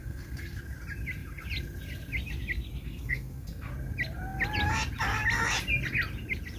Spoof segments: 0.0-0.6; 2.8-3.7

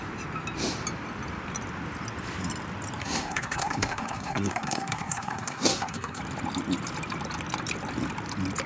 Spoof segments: 3.0-6.2

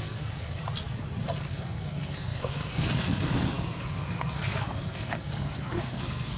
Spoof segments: 0.0-0.6; 1.5-6.4

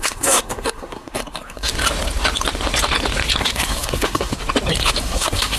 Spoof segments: 0.0-1.7; 3.4-4.3; 5.0-5.6